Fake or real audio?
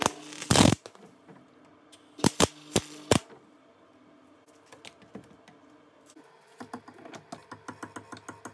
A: real